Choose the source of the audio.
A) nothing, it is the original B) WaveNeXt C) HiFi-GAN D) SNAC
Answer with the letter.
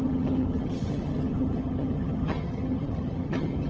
C